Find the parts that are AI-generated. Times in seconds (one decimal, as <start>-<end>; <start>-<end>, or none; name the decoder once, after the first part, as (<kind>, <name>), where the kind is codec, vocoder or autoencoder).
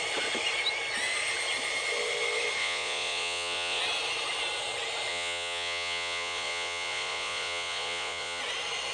2.6-3.8 (vocoder, Vocos); 5.1-8.4